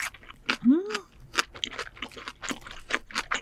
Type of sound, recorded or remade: recorded